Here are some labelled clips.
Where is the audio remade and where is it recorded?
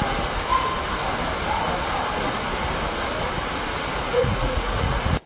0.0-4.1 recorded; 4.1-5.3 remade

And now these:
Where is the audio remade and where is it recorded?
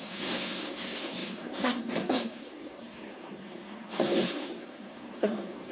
0.0-5.7 remade